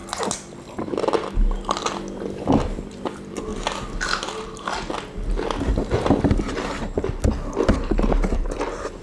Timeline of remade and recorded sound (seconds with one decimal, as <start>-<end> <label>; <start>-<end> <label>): 0.0-2.5 recorded; 2.5-3.5 remade; 3.5-7.7 recorded; 7.7-9.0 remade